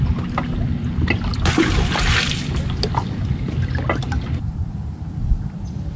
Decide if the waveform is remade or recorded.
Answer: recorded